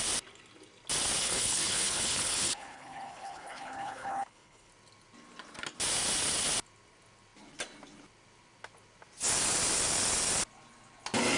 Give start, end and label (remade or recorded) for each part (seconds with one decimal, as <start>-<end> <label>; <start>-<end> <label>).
0.0-1.2 recorded; 1.2-4.7 remade; 4.7-11.4 recorded